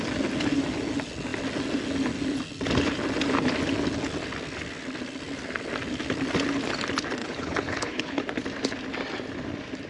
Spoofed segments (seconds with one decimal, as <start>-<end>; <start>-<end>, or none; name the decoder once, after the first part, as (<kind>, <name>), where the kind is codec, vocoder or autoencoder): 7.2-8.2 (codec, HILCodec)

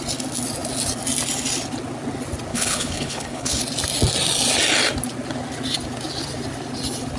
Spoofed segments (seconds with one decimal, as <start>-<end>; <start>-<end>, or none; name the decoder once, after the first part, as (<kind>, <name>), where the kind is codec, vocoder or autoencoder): 2.5-3.6 (codec, HILCodec)

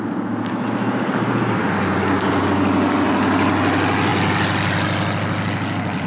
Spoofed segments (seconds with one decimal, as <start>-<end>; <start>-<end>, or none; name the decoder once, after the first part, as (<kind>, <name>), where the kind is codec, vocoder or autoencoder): none